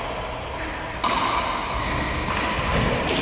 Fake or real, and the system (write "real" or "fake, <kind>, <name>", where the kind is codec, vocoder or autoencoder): real